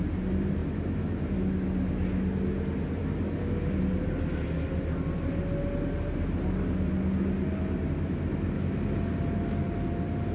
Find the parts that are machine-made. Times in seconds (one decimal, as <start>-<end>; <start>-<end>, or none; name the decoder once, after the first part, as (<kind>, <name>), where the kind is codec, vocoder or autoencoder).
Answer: none